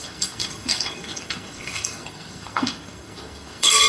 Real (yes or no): no